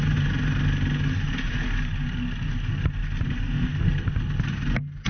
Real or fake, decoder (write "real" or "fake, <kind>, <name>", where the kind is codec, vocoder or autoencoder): real